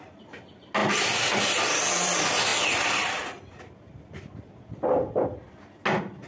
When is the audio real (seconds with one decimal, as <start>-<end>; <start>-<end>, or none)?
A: 0.0-6.3